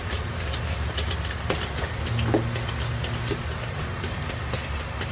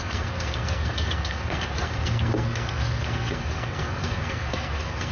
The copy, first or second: second